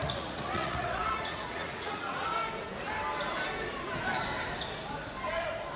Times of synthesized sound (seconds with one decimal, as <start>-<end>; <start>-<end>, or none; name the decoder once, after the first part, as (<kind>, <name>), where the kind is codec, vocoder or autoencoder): 0.0-2.3 (vocoder, Vocos)